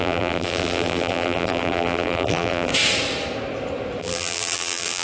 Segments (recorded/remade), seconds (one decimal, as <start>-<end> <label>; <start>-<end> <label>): 0.0-2.7 remade; 2.7-4.0 recorded; 4.0-5.0 remade